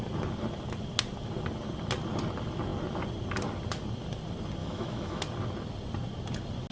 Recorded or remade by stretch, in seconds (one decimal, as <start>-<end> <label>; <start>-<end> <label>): 0.0-4.6 recorded; 4.6-5.2 remade; 5.2-6.7 recorded